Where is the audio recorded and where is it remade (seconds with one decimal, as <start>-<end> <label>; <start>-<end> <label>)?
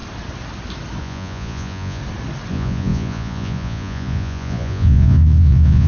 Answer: 0.0-1.0 recorded; 1.0-2.0 remade; 2.0-2.5 recorded; 2.5-5.9 remade